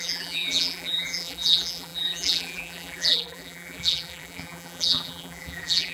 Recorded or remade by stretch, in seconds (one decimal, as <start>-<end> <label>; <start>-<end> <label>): 0.0-5.9 remade